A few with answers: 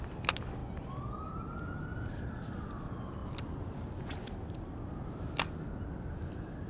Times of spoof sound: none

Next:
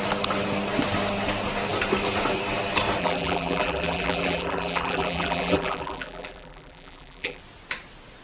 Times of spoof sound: 3.0-7.4

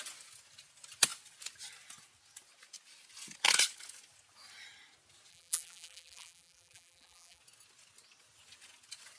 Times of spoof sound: 5.3-7.4

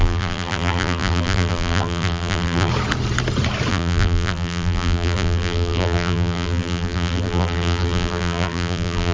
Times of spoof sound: 0.0-2.7; 3.7-9.1

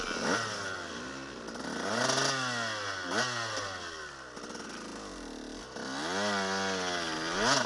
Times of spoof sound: none

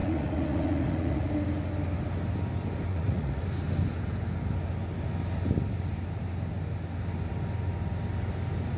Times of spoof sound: 0.0-1.3; 2.9-3.4